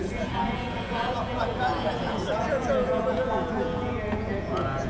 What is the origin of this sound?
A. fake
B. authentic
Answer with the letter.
A